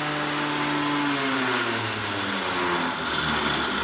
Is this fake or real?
real